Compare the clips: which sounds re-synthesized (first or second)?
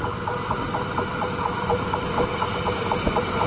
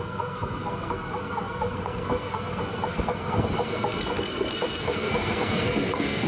second